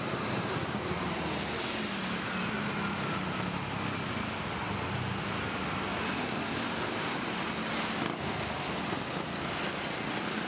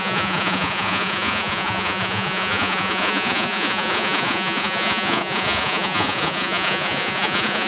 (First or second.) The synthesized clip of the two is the second